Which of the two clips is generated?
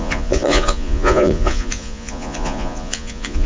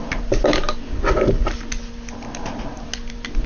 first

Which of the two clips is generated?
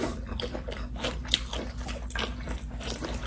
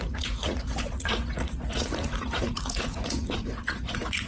second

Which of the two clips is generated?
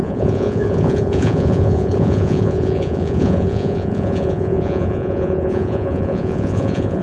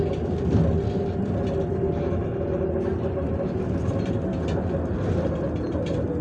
first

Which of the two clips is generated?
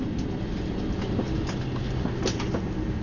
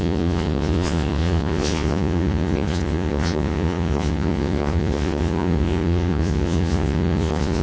second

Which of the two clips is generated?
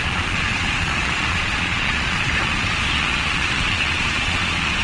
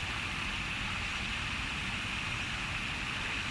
first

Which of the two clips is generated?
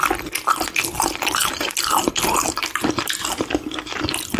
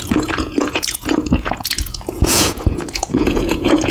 second